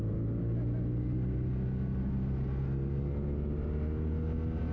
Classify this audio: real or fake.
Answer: real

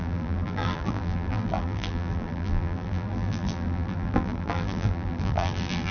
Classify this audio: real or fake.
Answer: fake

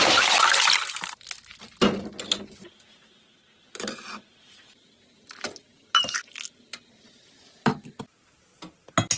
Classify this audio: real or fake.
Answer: real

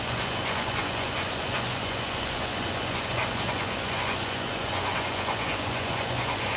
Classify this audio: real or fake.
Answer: fake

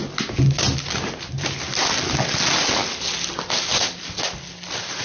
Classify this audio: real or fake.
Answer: real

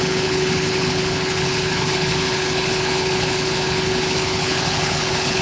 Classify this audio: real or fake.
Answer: fake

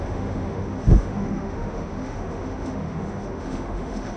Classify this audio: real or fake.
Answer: fake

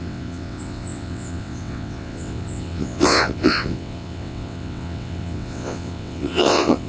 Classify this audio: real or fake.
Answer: fake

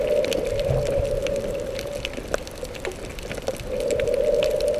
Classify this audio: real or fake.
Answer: real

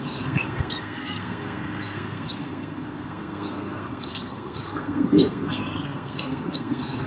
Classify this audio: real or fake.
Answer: fake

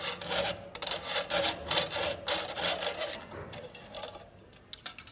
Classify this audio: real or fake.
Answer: real